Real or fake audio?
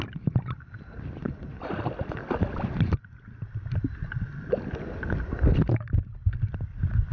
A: real